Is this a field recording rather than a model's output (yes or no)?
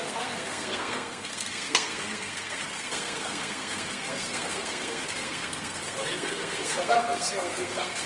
no